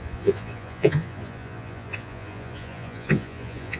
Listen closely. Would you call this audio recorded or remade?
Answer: remade